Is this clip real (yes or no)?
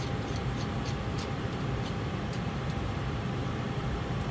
no